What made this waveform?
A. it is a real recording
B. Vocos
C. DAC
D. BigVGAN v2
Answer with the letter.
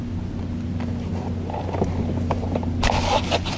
A